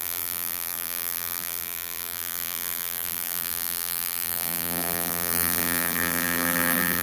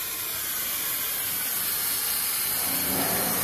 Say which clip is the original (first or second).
second